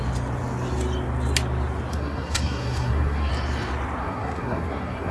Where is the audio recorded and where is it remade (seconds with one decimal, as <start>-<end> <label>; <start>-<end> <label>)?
0.0-1.9 recorded; 1.9-3.3 remade; 3.3-4.0 recorded; 4.0-5.1 remade